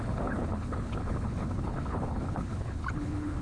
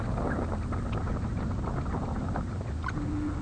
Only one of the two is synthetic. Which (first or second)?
first